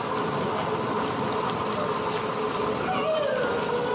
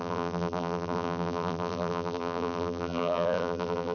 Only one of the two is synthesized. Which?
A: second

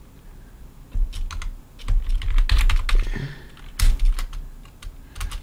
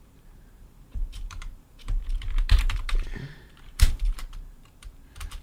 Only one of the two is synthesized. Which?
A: second